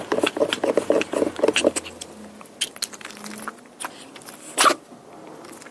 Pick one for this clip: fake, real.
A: real